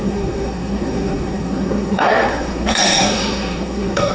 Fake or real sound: fake